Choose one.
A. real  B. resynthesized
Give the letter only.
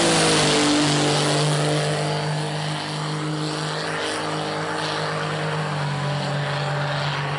A